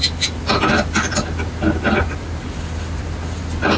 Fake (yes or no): no